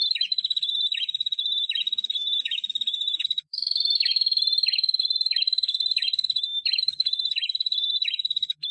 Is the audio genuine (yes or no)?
no